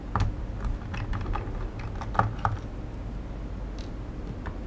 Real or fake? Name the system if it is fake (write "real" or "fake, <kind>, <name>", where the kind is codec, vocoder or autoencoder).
real